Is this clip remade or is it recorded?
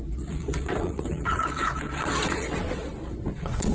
remade